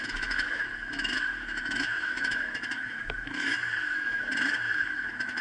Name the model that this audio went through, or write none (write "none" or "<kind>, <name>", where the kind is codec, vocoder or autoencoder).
autoencoder, DAC-VAE